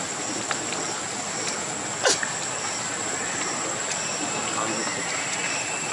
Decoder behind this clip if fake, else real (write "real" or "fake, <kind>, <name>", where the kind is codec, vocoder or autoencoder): real